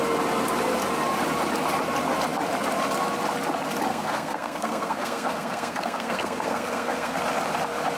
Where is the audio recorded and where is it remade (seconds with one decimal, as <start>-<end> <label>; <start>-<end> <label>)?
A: 0.0-3.9 recorded; 3.9-7.2 remade; 7.2-8.0 recorded